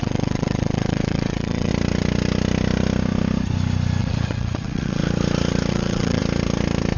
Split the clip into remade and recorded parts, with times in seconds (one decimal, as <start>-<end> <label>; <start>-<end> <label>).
0.0-1.7 remade; 1.7-4.0 recorded; 4.0-5.0 remade; 5.0-5.7 recorded; 5.7-6.2 remade; 6.2-7.0 recorded